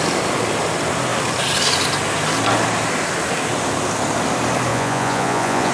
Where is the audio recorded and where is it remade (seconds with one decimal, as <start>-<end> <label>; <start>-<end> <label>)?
0.0-4.7 recorded; 4.7-5.7 remade